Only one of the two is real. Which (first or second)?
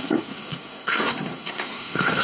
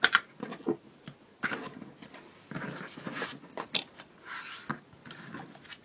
second